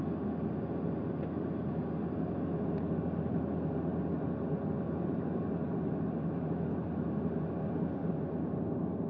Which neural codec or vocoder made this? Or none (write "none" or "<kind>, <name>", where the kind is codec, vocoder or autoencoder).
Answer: none